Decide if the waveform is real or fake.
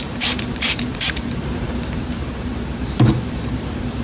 fake